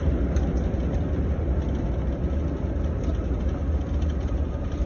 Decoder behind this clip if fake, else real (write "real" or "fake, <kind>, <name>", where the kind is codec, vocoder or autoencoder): real